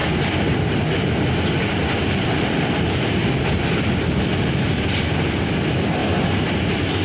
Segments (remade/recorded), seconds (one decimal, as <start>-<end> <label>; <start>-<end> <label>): 0.0-7.0 recorded